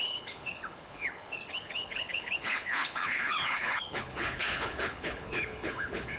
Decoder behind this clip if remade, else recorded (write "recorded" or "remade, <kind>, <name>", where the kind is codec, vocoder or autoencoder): remade, codec, HILCodec